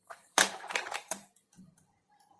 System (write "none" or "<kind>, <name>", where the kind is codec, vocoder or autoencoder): vocoder, BigVGAN v2